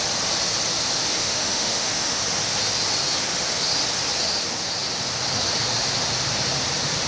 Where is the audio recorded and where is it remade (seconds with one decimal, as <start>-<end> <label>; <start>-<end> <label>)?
0.0-1.1 recorded; 1.1-2.2 remade; 2.2-7.1 recorded